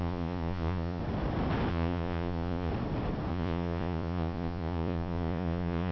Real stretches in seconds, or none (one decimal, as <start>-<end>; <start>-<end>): 1.0-1.7; 2.7-3.3